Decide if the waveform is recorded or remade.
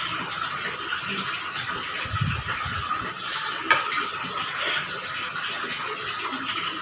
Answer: recorded